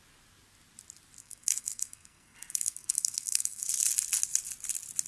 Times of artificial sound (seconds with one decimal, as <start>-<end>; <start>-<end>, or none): 1.2-3.7